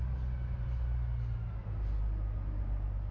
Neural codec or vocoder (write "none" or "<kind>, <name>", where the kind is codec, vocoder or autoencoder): none